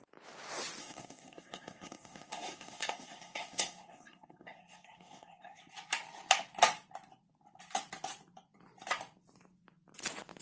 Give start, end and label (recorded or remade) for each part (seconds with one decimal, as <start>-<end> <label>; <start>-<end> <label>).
0.0-0.8 recorded; 0.8-5.6 remade; 5.6-10.4 recorded